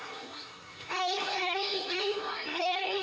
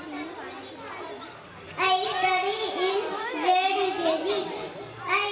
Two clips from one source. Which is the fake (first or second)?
first